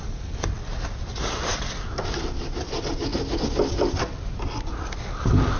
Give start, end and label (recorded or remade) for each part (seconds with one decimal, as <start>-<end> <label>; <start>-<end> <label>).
0.0-5.6 recorded